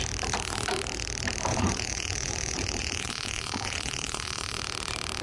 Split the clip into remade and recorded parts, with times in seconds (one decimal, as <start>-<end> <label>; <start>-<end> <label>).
0.0-1.5 recorded; 1.5-4.6 remade; 4.6-5.2 recorded